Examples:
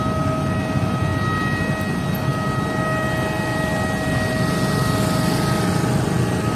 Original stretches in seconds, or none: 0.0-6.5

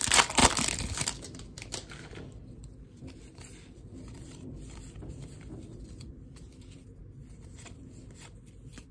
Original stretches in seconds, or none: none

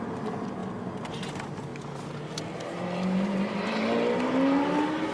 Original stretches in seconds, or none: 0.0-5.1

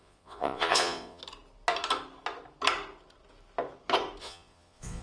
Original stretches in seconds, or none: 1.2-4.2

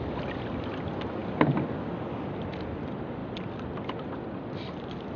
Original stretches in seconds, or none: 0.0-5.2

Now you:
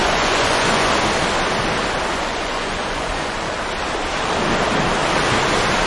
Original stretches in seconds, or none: 0.9-2.1; 3.6-5.9

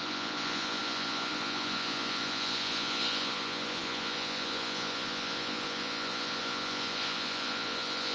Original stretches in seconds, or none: none

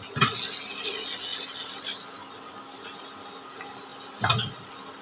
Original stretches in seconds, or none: 0.0-5.0